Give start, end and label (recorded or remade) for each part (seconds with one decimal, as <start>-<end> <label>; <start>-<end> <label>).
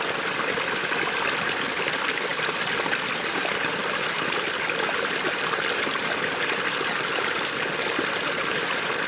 0.0-2.3 recorded; 2.3-6.0 remade; 6.0-9.1 recorded